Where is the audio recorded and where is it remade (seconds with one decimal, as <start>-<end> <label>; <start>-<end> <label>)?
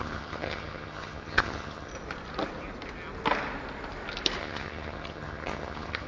0.0-1.9 remade; 1.9-4.4 recorded; 4.4-6.1 remade